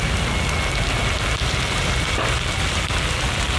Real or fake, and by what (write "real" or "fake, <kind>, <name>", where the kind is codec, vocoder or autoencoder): real